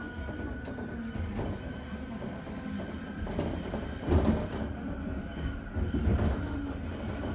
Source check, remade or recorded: recorded